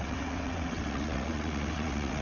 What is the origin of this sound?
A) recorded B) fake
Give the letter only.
B